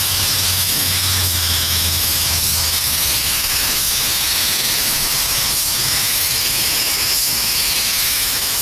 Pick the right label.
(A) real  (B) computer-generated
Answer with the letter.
B